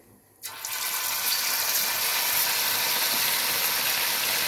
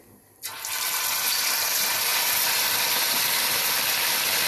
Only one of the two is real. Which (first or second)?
first